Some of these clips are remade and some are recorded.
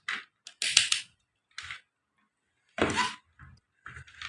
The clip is recorded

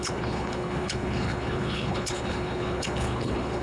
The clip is remade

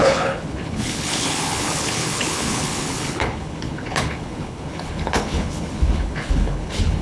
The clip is remade